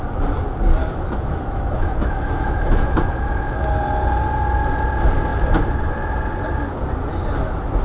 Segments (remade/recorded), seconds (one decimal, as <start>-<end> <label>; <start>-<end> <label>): 0.0-0.8 recorded; 0.8-3.7 remade; 3.7-7.8 recorded